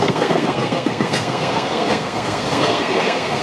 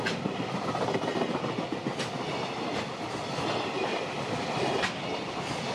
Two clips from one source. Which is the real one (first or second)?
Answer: second